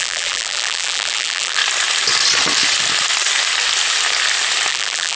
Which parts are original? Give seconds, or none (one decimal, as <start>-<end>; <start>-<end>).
1.6-4.7